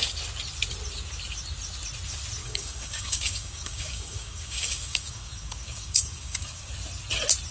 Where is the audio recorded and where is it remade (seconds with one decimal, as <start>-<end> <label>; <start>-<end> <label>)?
0.0-2.4 recorded; 2.4-6.7 remade; 6.7-7.5 recorded